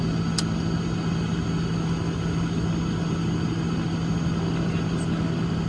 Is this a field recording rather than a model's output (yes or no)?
yes